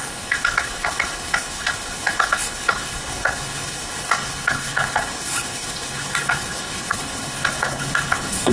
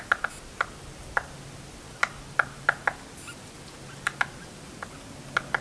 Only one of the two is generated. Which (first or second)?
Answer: first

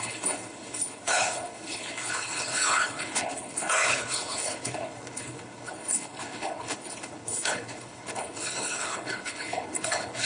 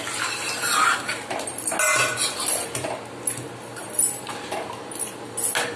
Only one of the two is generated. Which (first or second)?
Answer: first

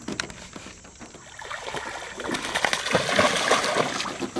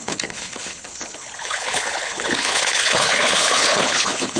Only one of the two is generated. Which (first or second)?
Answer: second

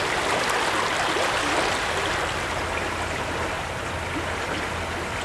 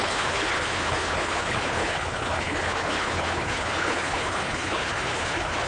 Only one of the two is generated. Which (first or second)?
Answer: second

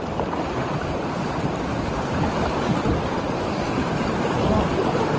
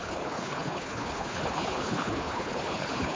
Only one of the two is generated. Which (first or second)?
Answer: second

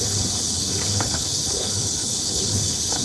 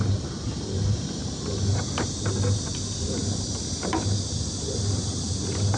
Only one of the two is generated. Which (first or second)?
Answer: first